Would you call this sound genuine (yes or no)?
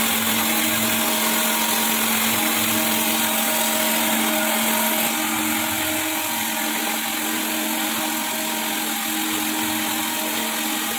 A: yes